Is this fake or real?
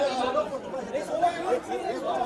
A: fake